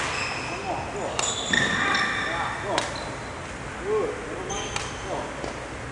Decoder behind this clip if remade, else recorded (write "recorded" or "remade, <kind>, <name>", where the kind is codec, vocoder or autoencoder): recorded